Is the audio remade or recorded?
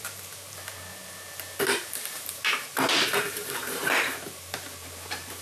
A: remade